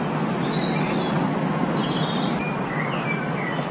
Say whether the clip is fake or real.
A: real